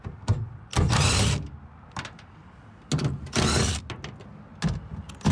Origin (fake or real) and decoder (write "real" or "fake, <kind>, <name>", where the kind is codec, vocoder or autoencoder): real